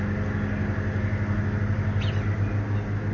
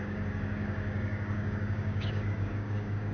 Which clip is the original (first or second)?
first